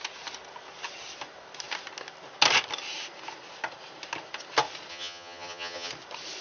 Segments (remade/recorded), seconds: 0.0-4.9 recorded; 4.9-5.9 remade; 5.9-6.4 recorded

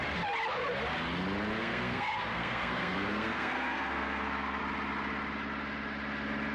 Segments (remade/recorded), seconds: 0.0-1.6 recorded; 1.6-4.6 remade; 4.6-6.5 recorded

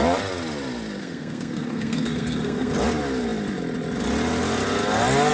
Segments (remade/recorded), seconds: 0.0-1.0 recorded; 1.0-2.7 remade; 2.7-5.3 recorded

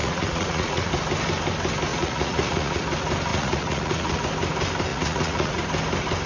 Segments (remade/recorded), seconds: 0.0-0.9 remade; 0.9-1.9 recorded; 1.9-2.8 remade; 2.8-3.3 recorded; 3.3-4.2 remade; 4.2-4.9 recorded; 4.9-5.6 remade; 5.6-6.3 recorded

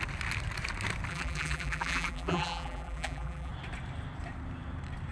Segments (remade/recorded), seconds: 0.0-1.1 recorded; 1.1-3.5 remade; 3.5-5.1 recorded